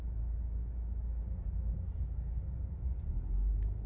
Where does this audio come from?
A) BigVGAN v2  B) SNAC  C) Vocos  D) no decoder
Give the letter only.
D